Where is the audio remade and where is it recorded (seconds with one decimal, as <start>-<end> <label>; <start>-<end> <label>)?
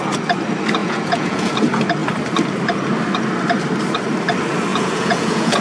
0.0-0.8 recorded; 0.8-1.6 remade; 1.6-4.7 recorded; 4.7-5.6 remade